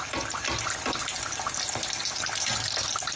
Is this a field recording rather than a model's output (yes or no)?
yes